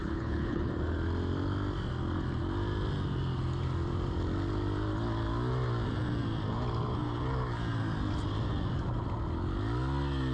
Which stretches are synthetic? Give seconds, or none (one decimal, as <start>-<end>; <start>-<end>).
0.0-0.7